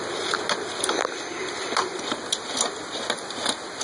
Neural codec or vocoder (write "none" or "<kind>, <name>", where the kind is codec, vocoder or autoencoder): none